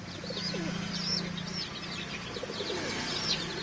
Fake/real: real